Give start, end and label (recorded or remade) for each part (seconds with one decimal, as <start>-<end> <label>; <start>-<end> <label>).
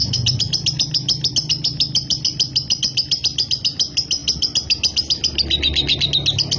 0.0-6.6 recorded